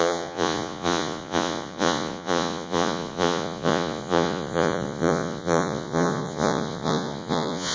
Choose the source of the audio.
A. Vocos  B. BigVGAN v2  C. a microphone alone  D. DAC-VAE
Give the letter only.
A